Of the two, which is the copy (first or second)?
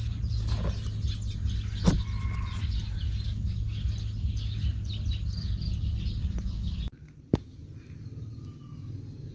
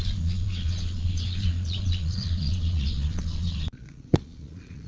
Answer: second